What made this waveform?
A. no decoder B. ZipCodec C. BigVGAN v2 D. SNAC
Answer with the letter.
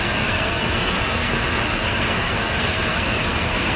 D